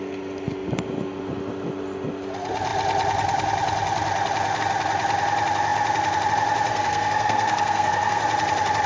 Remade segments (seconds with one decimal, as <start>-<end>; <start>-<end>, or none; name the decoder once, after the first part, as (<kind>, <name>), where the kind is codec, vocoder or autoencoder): 6.7-8.2 (codec, SNAC)